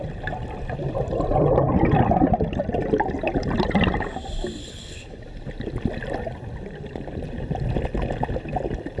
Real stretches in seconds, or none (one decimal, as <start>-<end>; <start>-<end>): 0.0-4.6; 5.2-9.0